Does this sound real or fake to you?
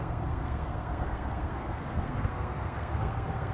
fake